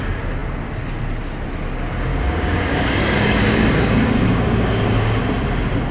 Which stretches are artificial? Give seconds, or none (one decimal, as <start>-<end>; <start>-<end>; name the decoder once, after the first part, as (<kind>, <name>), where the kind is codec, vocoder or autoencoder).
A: 2.1-5.2 (codec, DAC)